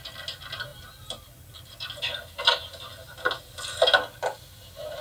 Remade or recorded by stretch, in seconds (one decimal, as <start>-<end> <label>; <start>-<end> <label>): 0.0-5.0 recorded